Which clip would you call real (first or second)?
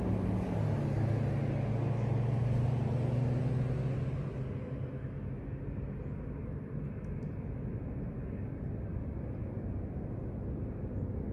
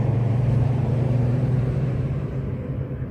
first